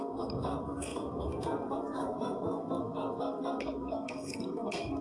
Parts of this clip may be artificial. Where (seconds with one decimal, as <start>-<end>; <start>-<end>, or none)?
0.0-5.0